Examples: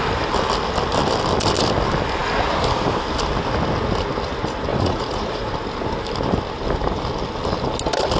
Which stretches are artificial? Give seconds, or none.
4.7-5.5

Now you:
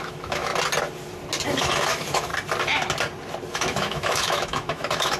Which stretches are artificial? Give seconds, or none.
0.0-0.5; 1.6-2.3; 3.5-5.2

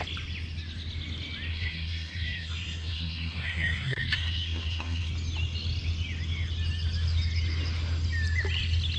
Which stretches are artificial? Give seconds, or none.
1.5-5.1

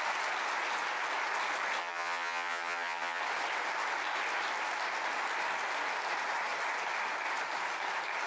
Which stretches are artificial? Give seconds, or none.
1.8-3.2

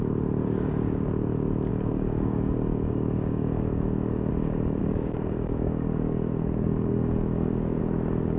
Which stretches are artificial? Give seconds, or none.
0.4-1.1; 1.7-4.3; 4.8-7.8

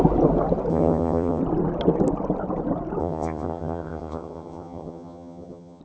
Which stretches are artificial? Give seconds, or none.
0.7-1.4; 3.0-5.8